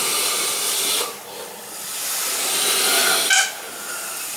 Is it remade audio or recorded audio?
recorded